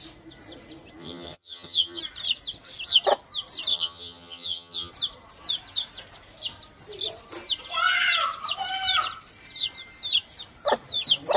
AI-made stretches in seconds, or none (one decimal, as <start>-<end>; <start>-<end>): 1.0-2.0; 3.7-4.9

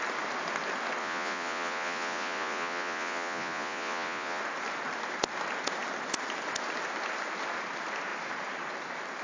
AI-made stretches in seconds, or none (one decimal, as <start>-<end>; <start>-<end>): 1.0-4.4

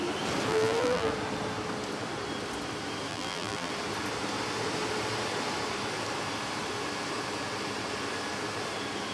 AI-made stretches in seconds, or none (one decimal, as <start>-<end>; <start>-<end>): 0.5-1.1; 3.1-3.7

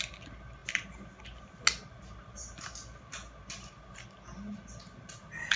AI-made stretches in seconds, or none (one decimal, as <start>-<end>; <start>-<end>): none

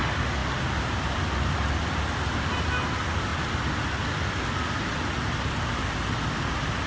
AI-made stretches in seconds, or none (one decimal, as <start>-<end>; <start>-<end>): none